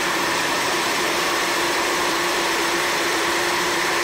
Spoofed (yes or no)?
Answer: yes